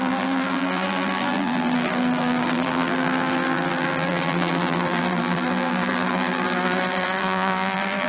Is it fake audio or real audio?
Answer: fake